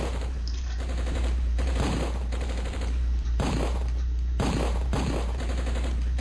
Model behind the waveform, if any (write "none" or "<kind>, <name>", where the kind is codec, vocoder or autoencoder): vocoder, BigVGAN v2